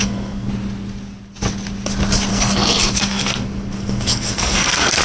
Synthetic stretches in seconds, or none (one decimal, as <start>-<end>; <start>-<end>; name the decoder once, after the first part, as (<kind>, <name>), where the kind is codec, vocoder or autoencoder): 0.0-0.5 (codec, SNAC); 2.3-5.0